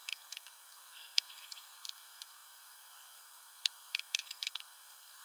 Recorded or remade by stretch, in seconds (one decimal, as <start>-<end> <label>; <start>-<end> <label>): 0.0-5.2 remade